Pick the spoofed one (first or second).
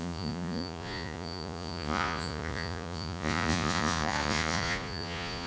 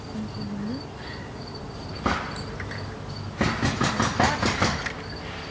first